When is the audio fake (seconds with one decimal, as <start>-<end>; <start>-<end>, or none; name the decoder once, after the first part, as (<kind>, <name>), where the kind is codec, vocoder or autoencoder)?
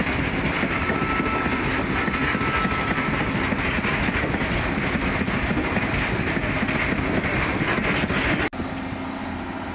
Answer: none